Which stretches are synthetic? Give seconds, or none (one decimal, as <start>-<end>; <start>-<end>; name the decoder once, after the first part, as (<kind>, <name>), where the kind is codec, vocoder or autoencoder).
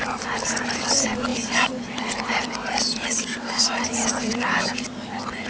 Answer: none